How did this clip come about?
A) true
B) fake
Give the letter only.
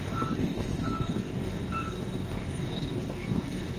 B